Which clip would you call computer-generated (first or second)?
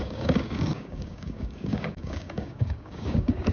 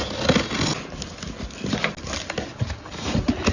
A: first